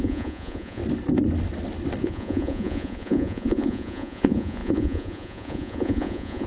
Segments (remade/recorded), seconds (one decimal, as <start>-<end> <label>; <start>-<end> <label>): 0.0-0.8 remade; 0.8-2.0 recorded; 2.0-6.5 remade

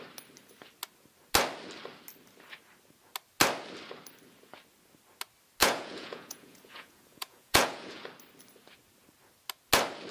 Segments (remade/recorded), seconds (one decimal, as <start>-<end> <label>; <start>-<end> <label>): 0.0-5.6 recorded; 5.6-8.1 remade; 8.1-10.1 recorded

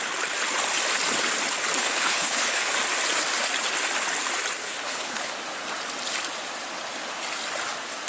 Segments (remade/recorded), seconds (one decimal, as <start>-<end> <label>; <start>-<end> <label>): 0.0-1.8 recorded; 1.8-2.7 remade; 2.7-4.6 recorded; 4.6-5.3 remade; 5.3-8.1 recorded

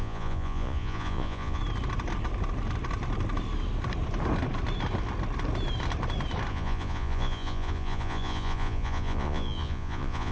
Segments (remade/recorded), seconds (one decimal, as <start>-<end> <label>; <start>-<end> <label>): 0.0-1.6 remade; 1.6-6.5 recorded; 6.5-10.3 remade

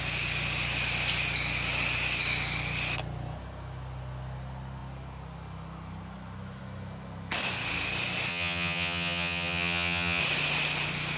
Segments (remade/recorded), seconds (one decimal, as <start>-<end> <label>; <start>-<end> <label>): 0.0-8.3 recorded; 8.3-10.2 remade; 10.2-11.2 recorded

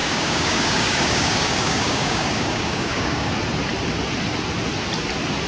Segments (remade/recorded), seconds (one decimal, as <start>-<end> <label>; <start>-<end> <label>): 0.0-3.3 remade; 3.3-5.5 recorded

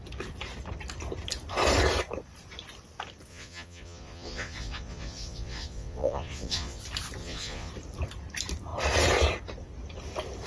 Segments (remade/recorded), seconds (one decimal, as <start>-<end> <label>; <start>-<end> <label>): 0.0-3.3 recorded; 3.3-6.8 remade; 6.8-7.2 recorded; 7.2-7.7 remade; 7.7-10.5 recorded